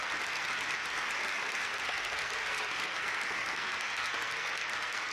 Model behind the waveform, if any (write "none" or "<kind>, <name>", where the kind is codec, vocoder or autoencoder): codec, SNAC